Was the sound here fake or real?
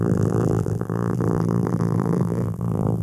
fake